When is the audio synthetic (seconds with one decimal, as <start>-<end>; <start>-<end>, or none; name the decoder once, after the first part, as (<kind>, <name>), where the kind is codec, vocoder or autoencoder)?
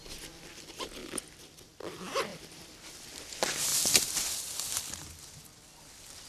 1.0-1.9 (vocoder, BigVGAN v2); 2.3-3.2; 3.7-4.8